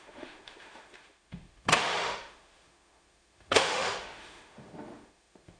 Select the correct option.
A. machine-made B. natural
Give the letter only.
A